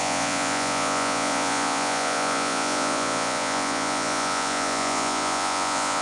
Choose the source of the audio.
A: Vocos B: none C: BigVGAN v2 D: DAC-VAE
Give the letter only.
A